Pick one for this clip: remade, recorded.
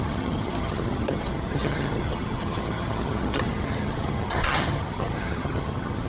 remade